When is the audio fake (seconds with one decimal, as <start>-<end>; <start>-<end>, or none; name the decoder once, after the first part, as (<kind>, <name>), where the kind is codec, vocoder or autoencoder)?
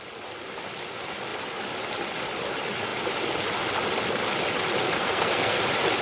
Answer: 5.0-5.6 (codec, SNAC)